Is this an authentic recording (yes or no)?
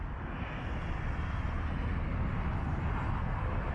yes